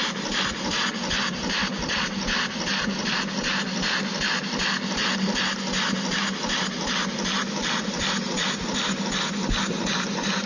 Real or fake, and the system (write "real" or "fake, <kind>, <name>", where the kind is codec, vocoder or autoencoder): real